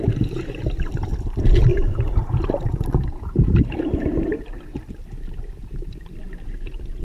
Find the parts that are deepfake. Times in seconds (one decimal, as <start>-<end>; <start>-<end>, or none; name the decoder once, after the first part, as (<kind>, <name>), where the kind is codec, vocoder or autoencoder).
none

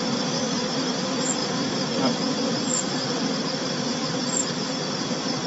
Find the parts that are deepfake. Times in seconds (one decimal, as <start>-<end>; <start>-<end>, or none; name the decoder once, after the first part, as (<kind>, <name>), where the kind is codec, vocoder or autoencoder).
1.4-3.4 (vocoder, BigVGAN v2); 3.9-4.6

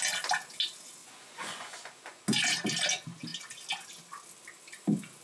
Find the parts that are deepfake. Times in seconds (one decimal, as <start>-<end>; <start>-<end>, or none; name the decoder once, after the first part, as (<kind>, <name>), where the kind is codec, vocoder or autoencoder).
1.0-2.2 (vocoder, Vocos)

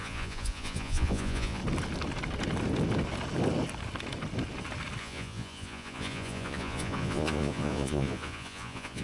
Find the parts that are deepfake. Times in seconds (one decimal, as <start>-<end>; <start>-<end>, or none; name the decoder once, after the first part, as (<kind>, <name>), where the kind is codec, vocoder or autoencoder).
0.0-1.6 (vocoder, Vocos); 5.0-9.0

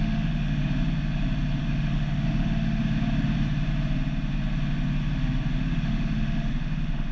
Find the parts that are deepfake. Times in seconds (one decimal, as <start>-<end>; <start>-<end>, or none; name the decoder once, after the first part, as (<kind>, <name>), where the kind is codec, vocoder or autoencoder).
0.0-0.6 (autoencoder, DAC-VAE); 1.6-2.8; 5.5-7.1